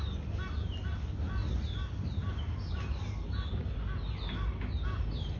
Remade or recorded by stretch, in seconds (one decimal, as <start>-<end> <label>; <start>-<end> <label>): 0.0-5.4 recorded

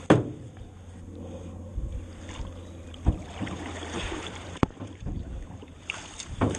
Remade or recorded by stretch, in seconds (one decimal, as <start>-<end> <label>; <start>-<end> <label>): 0.0-3.4 recorded; 3.4-5.7 remade; 5.7-6.6 recorded

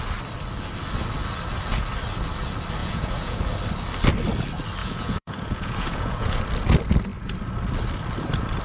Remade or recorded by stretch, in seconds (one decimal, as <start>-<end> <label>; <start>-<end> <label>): 0.0-2.8 recorded; 2.8-3.4 remade; 3.4-4.8 recorded; 4.8-6.4 remade; 6.4-8.6 recorded

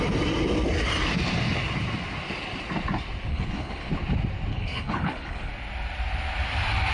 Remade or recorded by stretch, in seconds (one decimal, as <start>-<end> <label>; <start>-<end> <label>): 0.0-3.3 recorded; 3.3-3.9 remade; 3.9-4.5 recorded; 4.5-5.5 remade; 5.5-6.9 recorded